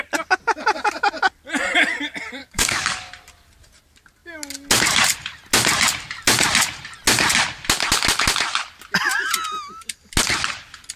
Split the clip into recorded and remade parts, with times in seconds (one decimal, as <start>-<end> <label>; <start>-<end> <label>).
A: 0.0-2.4 recorded; 2.4-3.1 remade; 3.1-11.0 recorded